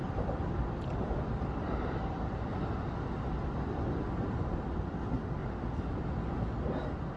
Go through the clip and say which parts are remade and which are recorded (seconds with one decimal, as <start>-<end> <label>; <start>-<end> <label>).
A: 0.0-2.5 remade; 2.5-4.9 recorded; 4.9-5.4 remade; 5.4-7.2 recorded